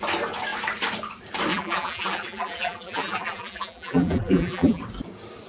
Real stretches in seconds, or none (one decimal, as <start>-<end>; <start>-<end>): 0.0-1.5; 4.8-5.5